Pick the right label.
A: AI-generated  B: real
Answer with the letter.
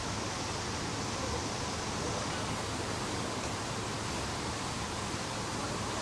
B